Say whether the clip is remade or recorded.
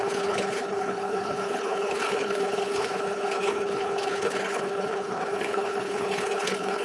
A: remade